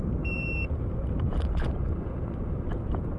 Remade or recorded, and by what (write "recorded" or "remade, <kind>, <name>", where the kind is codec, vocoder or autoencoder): remade, vocoder, BigVGAN v2